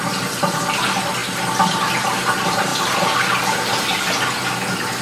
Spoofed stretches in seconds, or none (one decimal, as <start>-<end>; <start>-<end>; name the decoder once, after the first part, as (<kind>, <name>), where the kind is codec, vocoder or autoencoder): 0.0-2.7 (vocoder, BigVGAN v2)